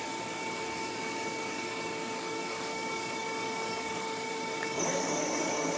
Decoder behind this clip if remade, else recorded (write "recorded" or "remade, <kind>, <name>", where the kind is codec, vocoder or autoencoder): remade, codec, DAC